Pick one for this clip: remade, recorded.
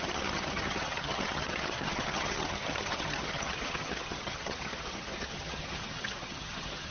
remade